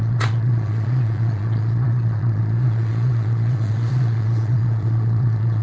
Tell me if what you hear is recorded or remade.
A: remade